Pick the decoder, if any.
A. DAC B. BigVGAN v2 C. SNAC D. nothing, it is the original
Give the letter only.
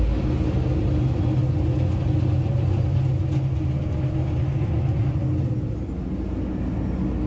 D